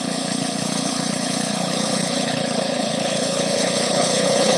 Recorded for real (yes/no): no